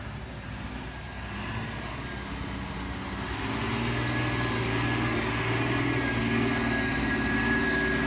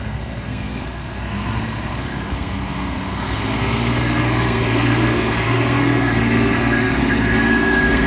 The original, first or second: first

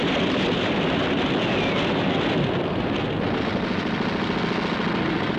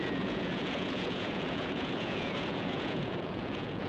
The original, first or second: first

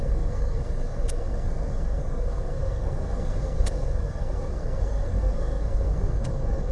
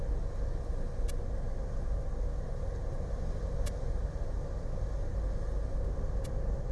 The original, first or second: second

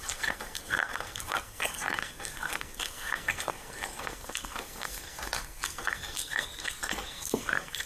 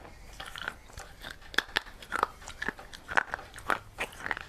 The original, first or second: second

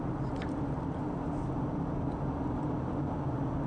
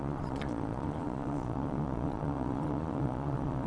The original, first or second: first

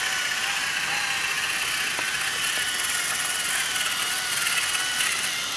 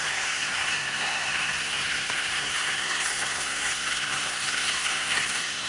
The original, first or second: first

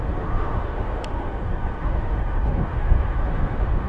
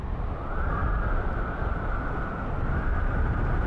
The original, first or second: second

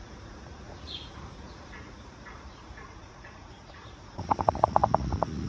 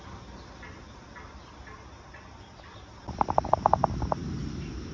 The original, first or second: second